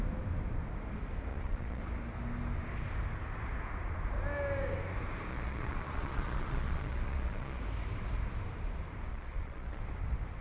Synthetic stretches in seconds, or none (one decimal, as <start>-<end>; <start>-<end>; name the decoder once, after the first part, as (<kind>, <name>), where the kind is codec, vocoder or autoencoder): 1.3-1.8 (vocoder, Vocos); 5.3-7.6; 9.1-9.8

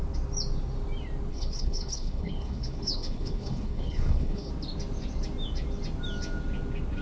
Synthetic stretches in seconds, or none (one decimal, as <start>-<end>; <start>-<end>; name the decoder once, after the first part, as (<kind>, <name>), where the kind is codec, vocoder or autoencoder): 1.3-4.5 (codec, HILCodec)

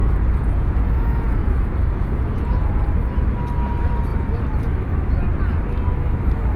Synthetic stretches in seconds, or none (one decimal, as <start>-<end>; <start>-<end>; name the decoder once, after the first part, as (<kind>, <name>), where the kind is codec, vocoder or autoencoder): 0.0-2.9 (vocoder, Vocos)